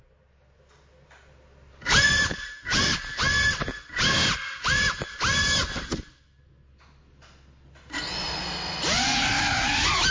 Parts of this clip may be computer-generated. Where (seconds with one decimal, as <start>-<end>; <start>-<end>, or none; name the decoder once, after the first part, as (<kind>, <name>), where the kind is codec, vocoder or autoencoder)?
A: none